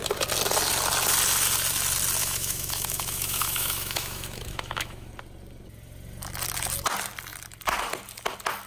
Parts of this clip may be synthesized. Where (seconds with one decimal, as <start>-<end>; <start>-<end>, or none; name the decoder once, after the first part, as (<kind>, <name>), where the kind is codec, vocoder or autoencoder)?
2.2-5.1 (autoencoder, DAC-VAE)